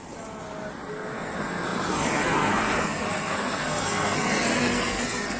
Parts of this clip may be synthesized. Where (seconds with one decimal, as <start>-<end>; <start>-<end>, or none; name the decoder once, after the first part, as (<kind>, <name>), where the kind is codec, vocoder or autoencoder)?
0.9-5.4 (codec, SNAC)